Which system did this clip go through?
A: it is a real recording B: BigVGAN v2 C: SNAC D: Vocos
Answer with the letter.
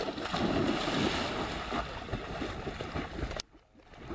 A